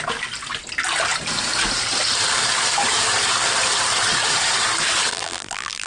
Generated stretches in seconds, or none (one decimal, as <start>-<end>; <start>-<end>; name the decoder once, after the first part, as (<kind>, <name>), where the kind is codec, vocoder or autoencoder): 5.1-5.9 (vocoder, BigVGAN v2)